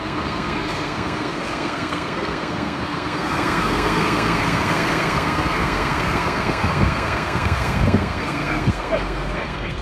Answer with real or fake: fake